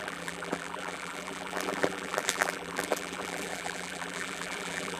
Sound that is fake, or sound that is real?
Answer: fake